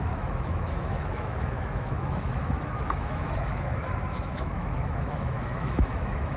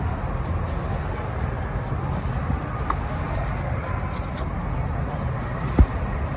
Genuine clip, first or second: second